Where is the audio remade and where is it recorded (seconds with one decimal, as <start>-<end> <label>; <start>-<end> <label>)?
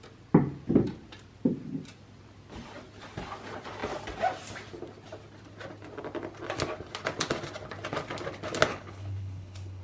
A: 0.0-8.7 recorded; 8.7-9.8 remade